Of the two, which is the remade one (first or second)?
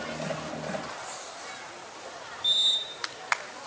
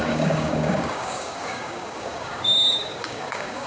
second